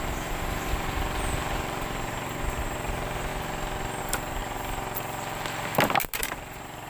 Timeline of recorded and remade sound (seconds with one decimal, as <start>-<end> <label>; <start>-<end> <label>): 0.0-3.3 remade; 3.3-4.0 recorded; 4.0-4.4 remade; 4.4-6.2 recorded; 6.2-6.9 remade